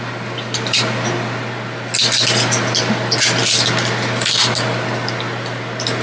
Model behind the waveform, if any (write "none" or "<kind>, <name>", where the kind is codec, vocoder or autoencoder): none